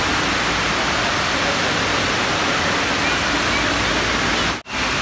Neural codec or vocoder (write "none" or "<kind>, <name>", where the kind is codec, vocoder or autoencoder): none